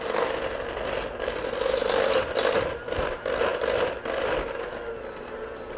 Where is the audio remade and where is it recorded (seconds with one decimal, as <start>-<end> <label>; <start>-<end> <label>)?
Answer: 0.0-5.8 recorded